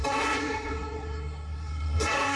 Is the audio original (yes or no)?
no